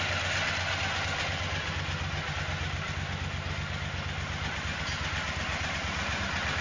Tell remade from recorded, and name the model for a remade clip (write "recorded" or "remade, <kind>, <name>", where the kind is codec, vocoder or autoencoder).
recorded